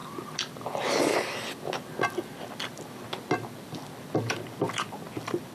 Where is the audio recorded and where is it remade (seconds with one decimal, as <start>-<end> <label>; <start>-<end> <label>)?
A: 0.0-5.5 recorded